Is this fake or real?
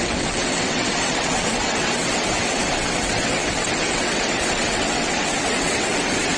fake